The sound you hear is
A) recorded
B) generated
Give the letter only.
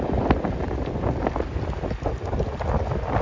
A